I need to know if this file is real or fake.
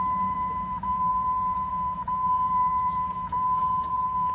fake